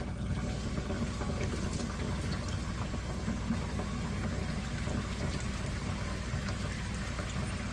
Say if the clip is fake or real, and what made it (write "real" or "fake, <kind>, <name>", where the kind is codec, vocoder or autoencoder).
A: real